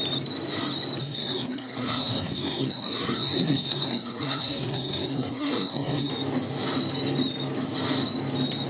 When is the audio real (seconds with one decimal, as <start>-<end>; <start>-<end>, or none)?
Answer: 0.0-1.0; 6.1-8.7